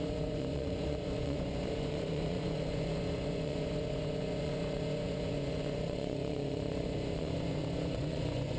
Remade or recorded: remade